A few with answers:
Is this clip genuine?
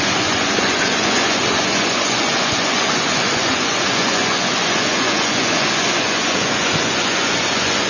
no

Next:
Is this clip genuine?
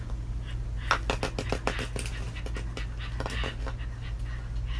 yes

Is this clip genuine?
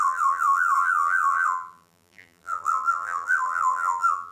no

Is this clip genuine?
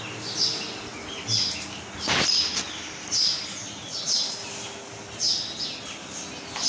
yes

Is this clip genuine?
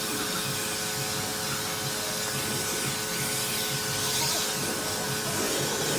yes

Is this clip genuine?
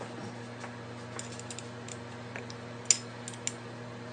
yes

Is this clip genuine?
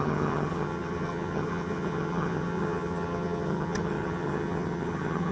no